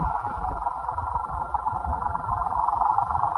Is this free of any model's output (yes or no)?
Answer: no